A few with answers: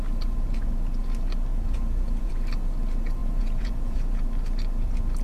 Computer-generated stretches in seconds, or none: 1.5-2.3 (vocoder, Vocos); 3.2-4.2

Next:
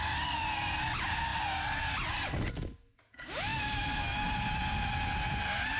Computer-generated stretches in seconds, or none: none

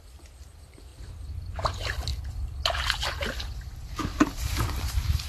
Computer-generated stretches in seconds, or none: 0.0-0.9 (vocoder, BigVGAN v2); 1.7-2.1; 4.2-5.3

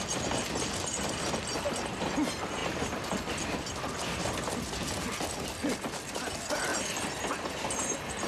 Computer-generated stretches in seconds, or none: none

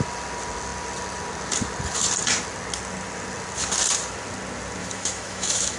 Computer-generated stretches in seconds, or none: 4.8-5.8 (autoencoder, DAC-VAE)

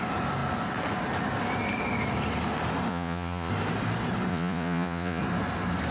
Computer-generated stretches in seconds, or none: 2.9-3.5 (vocoder, Vocos); 4.3-5.2

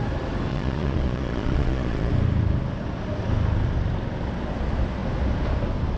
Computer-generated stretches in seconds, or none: 0.5-2.1 (vocoder, Vocos)